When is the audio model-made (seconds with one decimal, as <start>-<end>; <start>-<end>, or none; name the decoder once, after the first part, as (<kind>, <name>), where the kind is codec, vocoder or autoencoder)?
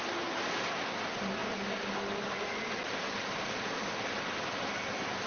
none